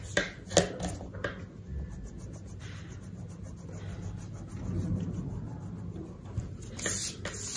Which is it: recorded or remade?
recorded